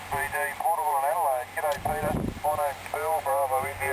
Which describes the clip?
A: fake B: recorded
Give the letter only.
B